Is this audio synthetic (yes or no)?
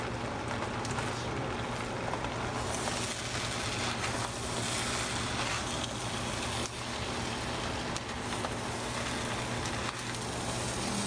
no